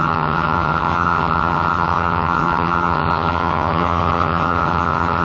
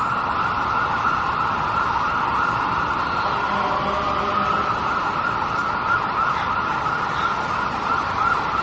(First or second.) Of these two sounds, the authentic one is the second